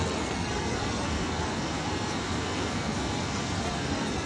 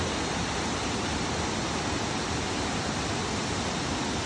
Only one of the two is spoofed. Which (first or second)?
first